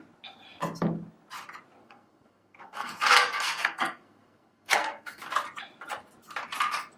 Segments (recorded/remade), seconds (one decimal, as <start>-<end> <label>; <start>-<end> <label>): 0.0-1.8 recorded; 1.8-5.2 remade; 5.2-7.0 recorded